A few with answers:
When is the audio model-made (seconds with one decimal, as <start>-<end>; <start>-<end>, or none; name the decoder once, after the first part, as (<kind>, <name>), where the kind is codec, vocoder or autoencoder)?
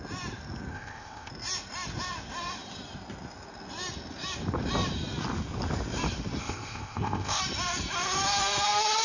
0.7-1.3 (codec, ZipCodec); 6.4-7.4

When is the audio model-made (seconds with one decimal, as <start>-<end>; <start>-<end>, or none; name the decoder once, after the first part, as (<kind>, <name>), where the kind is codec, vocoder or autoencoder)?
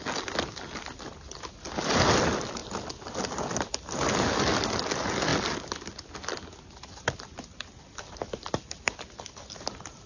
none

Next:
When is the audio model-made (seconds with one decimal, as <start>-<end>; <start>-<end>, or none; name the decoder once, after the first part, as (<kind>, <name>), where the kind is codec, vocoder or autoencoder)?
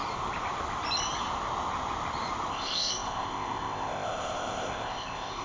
2.5-5.4 (codec, ZipCodec)